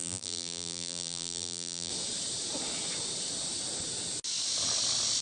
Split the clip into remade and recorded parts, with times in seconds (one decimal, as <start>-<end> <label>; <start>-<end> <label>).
0.0-1.9 remade; 1.9-5.2 recorded